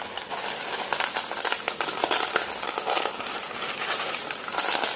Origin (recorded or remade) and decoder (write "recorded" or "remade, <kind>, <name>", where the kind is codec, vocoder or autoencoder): recorded